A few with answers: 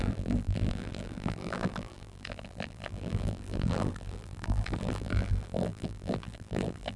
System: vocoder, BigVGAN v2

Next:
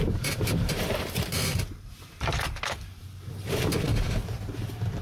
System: vocoder, BigVGAN v2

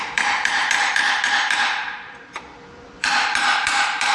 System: vocoder, BigVGAN v2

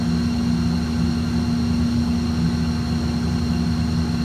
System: none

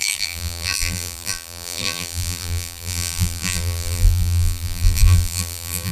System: vocoder, BigVGAN v2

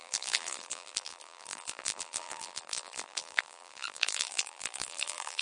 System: vocoder, BigVGAN v2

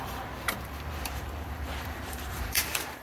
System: vocoder, BigVGAN v2